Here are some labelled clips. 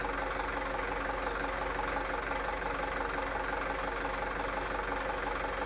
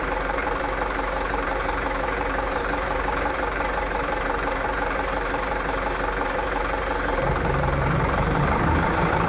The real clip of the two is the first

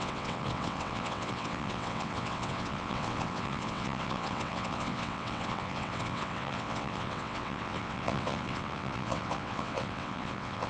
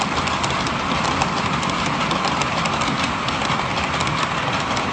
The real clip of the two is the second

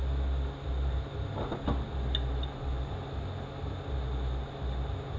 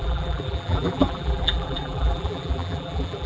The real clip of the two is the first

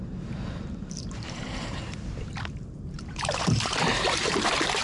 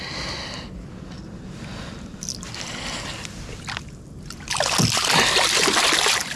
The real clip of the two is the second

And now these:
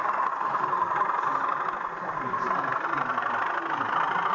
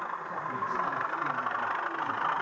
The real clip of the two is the second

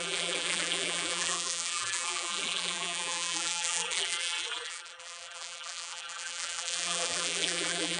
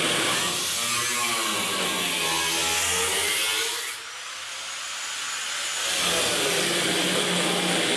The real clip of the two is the second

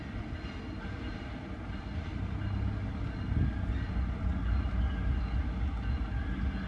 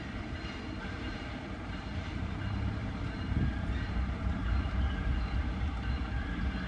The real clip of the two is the first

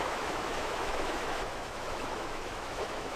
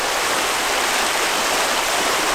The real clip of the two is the second